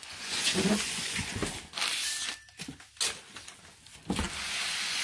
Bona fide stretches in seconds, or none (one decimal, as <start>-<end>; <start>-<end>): 1.4-4.4